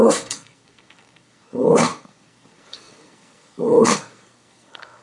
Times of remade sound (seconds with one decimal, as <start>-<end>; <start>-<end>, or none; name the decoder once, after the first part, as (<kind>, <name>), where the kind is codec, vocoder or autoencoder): 0.0-5.0 (codec, SNAC)